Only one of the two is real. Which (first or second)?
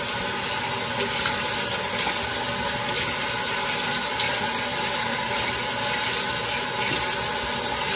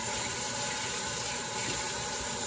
first